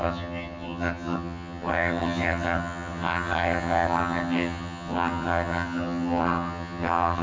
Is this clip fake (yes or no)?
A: yes